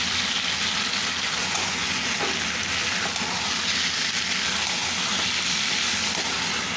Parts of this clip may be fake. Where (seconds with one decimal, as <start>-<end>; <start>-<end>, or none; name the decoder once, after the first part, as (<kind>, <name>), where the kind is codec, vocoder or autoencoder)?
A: 1.4-2.0 (vocoder, Vocos)